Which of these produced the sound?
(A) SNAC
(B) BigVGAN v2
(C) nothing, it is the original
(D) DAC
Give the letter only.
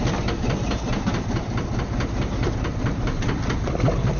C